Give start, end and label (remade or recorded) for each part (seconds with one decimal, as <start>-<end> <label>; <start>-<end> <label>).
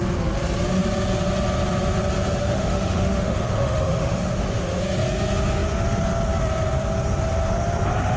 0.0-2.4 recorded; 2.4-4.8 remade; 4.8-8.2 recorded